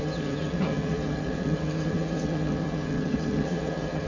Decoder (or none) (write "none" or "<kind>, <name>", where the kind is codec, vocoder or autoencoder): vocoder, HiFi-GAN